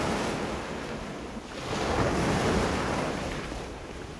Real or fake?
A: real